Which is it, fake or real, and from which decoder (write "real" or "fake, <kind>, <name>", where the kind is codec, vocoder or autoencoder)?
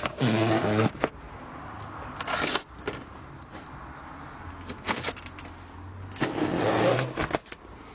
real